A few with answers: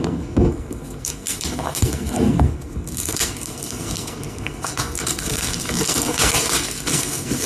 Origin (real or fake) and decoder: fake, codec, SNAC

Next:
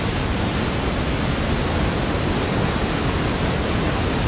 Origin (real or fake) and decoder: real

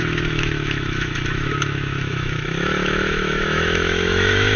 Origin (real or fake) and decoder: fake, autoencoder, DAC-VAE